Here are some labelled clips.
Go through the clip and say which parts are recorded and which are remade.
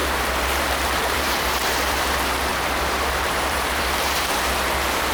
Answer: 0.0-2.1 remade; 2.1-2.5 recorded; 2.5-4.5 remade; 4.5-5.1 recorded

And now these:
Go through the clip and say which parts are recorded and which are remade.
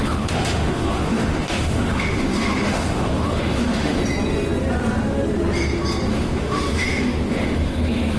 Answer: 0.0-4.0 remade; 4.0-6.1 recorded; 6.1-8.2 remade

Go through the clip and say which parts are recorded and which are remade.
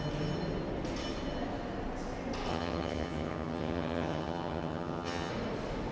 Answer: 0.0-2.5 recorded; 2.5-5.3 remade; 5.3-5.9 recorded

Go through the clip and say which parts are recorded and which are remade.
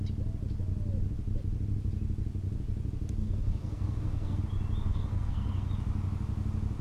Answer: 0.0-3.2 recorded; 3.2-4.4 remade; 4.4-4.9 recorded; 4.9-5.7 remade; 5.7-6.8 recorded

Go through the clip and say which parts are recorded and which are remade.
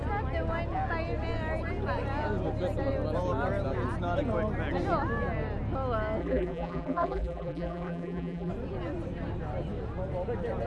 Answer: 0.0-6.2 recorded; 6.2-8.5 remade; 8.5-10.7 recorded